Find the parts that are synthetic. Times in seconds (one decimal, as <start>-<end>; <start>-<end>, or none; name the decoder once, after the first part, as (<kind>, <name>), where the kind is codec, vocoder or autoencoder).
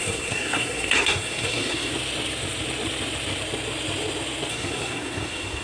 0.0-1.9 (codec, SNAC); 4.5-5.6